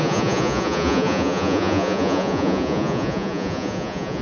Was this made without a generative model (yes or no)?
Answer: no